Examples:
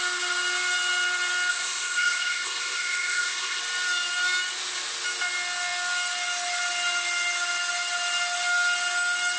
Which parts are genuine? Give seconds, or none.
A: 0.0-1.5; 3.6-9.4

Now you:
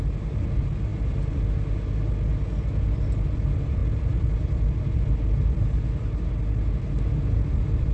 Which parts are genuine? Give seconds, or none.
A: 0.0-7.9

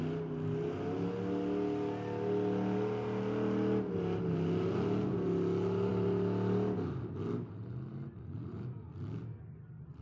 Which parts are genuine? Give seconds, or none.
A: 0.0-10.0

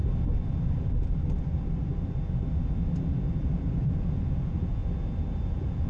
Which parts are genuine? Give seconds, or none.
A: 0.0-3.5; 4.8-5.5

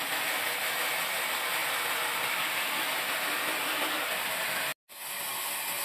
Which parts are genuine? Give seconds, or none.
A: 4.7-5.8

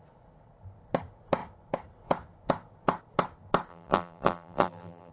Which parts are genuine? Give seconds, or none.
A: 0.0-3.7

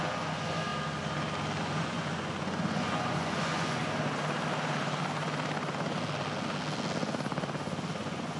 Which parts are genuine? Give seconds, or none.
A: 0.7-1.6; 3.8-8.0

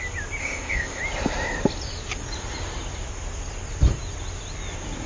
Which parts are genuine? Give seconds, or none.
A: 0.0-0.4; 1.0-5.1